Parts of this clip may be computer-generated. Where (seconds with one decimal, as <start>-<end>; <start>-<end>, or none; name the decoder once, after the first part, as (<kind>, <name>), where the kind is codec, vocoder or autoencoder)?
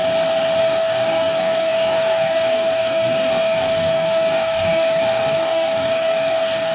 0.6-6.7 (codec, DAC)